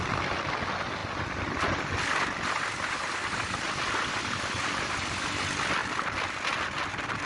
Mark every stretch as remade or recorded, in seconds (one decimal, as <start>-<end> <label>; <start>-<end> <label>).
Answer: 0.0-7.3 recorded